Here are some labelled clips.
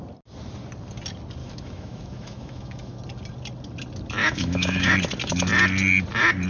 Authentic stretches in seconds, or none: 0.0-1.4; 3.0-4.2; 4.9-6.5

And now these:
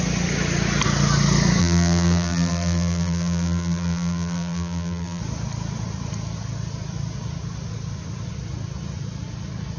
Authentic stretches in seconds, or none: 0.0-1.6; 5.2-9.8

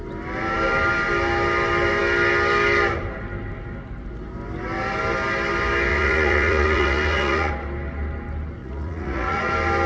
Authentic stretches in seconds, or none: 0.0-5.9; 7.5-8.6; 9.5-9.9

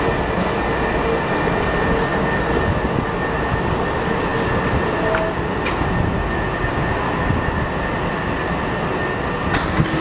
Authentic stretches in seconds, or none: 0.0-10.0

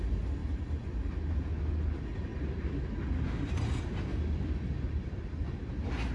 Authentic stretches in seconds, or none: 0.0-6.1

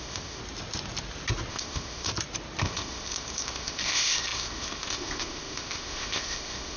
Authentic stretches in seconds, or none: 0.4-1.5; 2.1-2.6

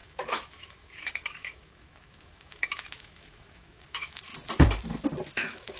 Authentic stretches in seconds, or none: 4.3-5.3